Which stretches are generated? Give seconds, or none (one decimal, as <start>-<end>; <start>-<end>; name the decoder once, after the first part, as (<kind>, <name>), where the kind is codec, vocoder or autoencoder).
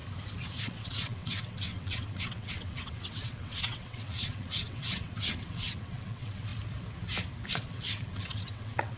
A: 0.6-6.5 (vocoder, WaveNeXt); 7.5-9.0